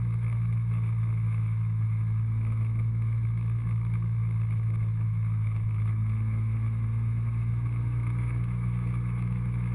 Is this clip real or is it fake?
fake